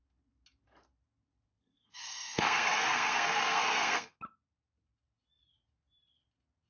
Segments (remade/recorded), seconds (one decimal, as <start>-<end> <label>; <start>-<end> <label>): 0.0-1.5 recorded; 1.5-4.2 remade; 4.2-6.7 recorded